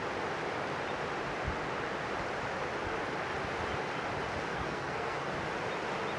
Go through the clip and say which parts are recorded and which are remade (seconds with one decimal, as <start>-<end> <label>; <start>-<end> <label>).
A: 0.0-4.5 recorded; 4.5-5.3 remade; 5.3-6.2 recorded